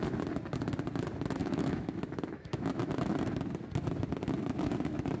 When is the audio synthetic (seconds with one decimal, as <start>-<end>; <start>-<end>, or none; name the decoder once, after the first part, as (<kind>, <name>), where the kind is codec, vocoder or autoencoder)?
1.4-3.1 (autoencoder, DAC-VAE)